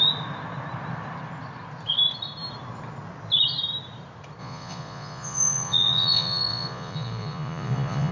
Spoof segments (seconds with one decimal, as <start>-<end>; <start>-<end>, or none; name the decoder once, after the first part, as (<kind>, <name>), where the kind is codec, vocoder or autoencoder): 4.4-8.1 (vocoder, Vocos)